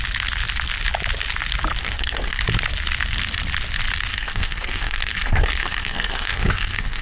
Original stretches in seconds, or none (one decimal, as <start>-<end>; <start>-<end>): 0.0-1.8; 2.4-4.1